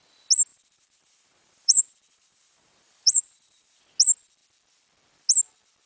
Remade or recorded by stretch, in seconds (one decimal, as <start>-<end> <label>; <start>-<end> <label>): 0.0-0.5 recorded; 0.5-3.8 remade; 3.8-5.9 recorded